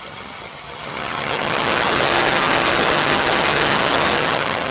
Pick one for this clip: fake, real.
fake